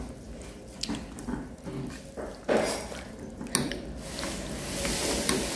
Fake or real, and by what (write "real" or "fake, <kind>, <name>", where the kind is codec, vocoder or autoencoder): real